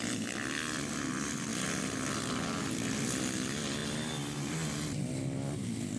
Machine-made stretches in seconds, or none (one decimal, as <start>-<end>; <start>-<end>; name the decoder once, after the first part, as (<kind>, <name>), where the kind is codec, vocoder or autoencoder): none